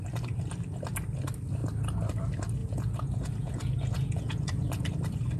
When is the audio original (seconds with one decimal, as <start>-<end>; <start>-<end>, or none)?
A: 0.0-2.6; 4.9-5.4